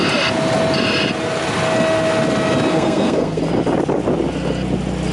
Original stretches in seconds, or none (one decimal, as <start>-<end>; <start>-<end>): 0.0-2.7; 3.4-5.1